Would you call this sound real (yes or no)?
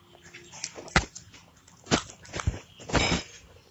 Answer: yes